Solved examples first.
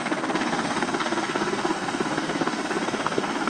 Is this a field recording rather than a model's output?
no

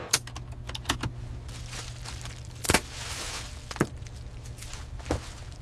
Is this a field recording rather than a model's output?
yes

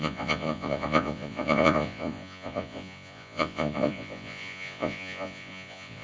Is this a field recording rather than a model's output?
no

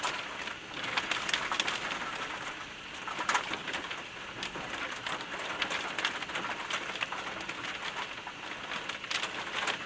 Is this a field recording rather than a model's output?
yes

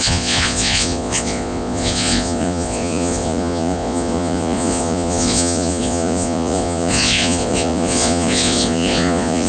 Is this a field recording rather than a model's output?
no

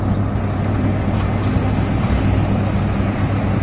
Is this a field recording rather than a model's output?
yes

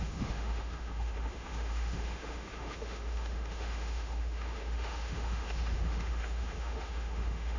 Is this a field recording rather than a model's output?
no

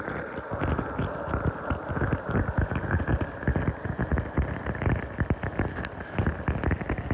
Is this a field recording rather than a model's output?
yes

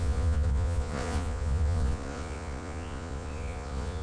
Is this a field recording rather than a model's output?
no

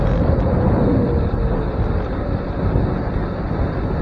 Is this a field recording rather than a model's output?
yes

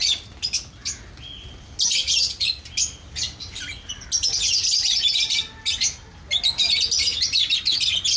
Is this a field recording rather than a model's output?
yes